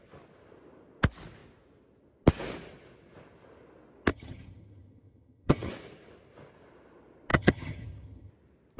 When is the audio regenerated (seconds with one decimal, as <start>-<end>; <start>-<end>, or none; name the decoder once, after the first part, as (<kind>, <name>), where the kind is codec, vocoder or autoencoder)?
4.1-5.7 (vocoder, HiFi-GAN); 7.3-8.3